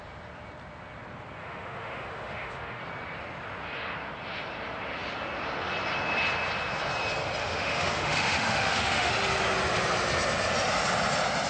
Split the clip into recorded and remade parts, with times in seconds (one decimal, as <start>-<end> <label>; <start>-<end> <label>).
0.0-1.4 recorded; 1.4-2.8 remade; 2.8-7.4 recorded; 7.4-9.1 remade; 9.1-11.5 recorded